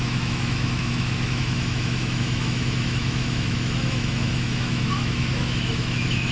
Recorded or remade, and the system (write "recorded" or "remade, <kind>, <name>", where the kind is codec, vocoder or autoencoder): remade, autoencoder, DAC-VAE